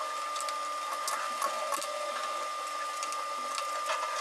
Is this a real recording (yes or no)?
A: yes